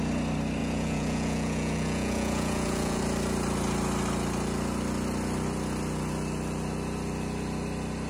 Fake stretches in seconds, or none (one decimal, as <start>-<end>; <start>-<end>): 0.6-3.0